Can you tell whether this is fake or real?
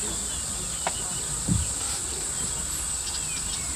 real